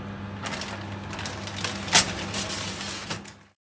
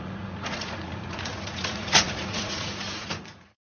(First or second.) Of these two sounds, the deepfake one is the second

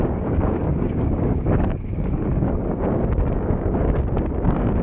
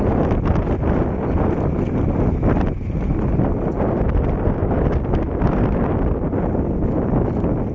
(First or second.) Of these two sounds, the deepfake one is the first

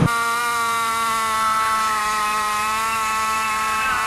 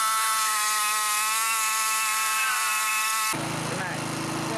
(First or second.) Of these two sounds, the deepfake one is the first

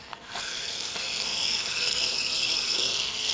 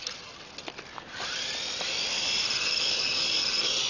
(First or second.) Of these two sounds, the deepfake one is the first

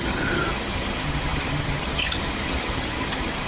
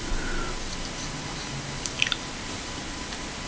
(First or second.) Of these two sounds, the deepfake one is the first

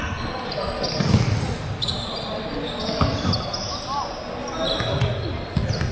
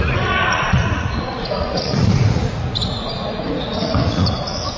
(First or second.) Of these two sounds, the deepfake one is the second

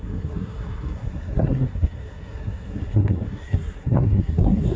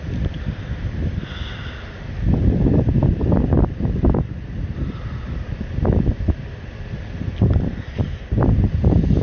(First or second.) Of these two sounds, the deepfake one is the first